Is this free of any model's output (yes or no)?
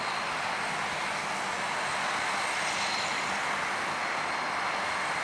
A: yes